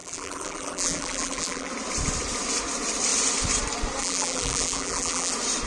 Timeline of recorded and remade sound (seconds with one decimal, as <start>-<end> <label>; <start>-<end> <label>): 0.0-1.7 remade; 1.7-4.0 recorded; 4.0-5.3 remade; 5.3-5.7 recorded